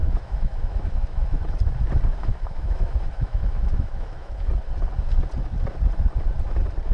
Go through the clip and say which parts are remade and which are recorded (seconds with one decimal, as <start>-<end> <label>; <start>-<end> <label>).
0.0-1.4 remade; 1.4-2.2 recorded; 2.2-4.5 remade; 4.5-6.9 recorded